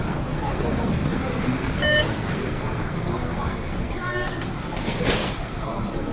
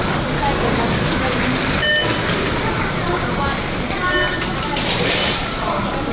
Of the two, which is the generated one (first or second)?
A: first